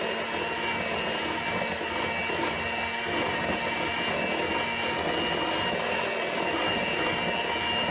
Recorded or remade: recorded